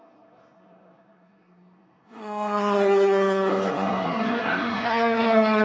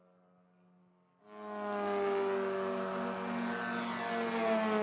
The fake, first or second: first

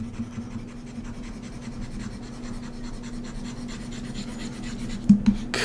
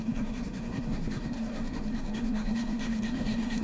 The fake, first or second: second